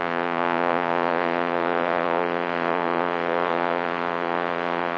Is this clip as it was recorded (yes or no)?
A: no